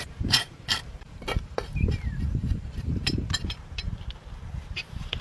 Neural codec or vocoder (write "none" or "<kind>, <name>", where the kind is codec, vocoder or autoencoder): vocoder, BigVGAN v2